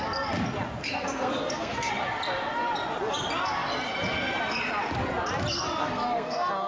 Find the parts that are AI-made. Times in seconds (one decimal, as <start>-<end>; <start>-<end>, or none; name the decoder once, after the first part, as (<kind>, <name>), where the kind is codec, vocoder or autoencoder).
0.8-1.9 (codec, SNAC); 5.8-6.7